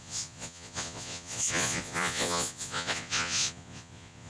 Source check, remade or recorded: remade